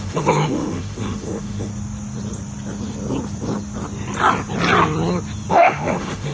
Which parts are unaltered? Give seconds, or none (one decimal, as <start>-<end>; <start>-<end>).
1.7-5.5